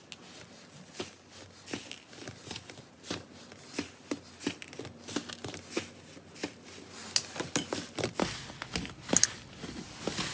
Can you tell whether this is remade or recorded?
recorded